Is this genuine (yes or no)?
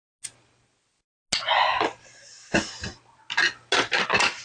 yes